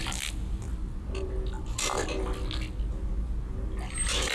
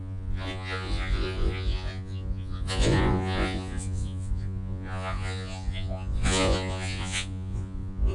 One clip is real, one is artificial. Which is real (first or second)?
first